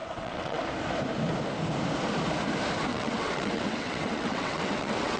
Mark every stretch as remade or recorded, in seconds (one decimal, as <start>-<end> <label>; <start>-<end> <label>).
0.0-0.6 remade; 0.6-2.9 recorded; 2.9-5.2 remade